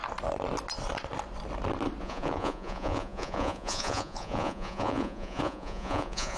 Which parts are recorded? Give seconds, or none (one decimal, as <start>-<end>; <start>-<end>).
0.0-2.0